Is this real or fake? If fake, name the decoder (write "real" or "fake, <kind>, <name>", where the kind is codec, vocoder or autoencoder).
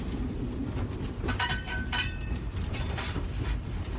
fake, vocoder, BigVGAN v2